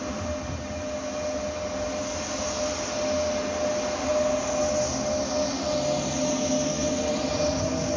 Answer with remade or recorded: recorded